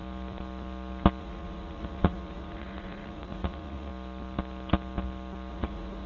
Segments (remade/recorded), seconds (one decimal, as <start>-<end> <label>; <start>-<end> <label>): 0.0-1.2 recorded; 1.2-3.9 remade; 3.9-5.5 recorded; 5.5-6.1 remade